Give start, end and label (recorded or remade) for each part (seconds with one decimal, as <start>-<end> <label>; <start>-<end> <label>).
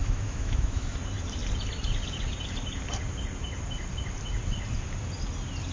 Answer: 0.0-0.9 remade; 0.9-5.7 recorded